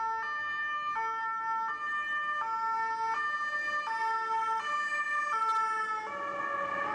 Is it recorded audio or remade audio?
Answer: recorded